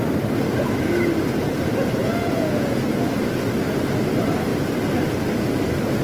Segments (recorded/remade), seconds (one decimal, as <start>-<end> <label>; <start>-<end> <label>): 0.0-2.0 recorded; 2.0-2.8 remade; 2.8-6.0 recorded